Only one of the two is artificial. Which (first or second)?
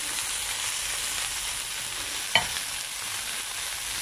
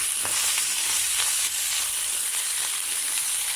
second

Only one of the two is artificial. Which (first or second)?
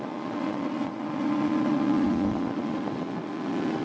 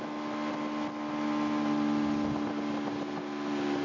first